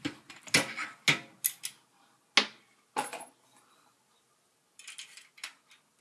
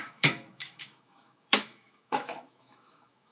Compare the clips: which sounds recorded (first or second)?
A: first